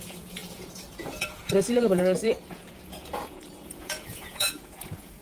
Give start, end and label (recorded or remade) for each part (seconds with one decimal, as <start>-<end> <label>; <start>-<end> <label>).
0.0-5.2 remade